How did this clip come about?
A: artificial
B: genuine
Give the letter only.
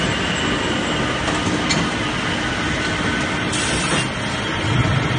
B